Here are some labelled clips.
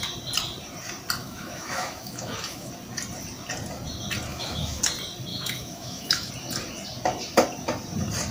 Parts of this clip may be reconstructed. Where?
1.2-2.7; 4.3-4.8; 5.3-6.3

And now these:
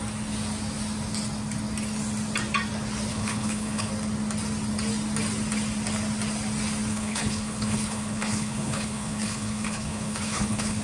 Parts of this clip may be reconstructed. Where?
3.1-3.9; 6.9-10.8

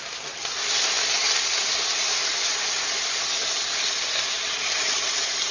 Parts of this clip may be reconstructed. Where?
none

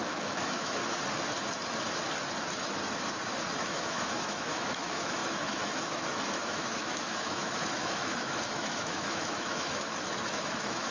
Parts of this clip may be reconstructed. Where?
0.0-0.8; 3.6-10.9

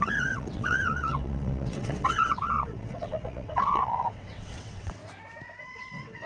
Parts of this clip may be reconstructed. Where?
0.0-5.0; 5.6-6.3

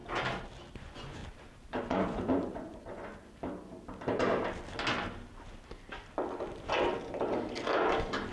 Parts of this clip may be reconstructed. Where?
0.7-1.2; 1.8-3.1

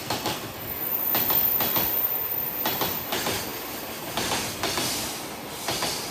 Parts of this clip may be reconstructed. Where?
0.0-0.9

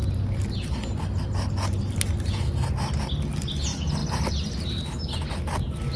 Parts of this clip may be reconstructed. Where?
0.0-0.5; 4.0-4.6